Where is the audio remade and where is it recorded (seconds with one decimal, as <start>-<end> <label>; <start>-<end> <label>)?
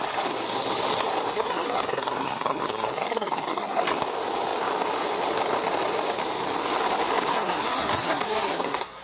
0.0-1.3 recorded; 1.3-3.8 remade; 3.8-7.3 recorded; 7.3-9.0 remade